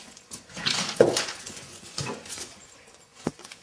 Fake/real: fake